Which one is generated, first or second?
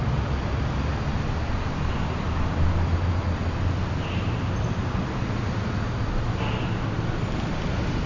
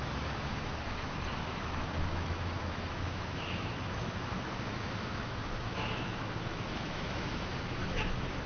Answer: second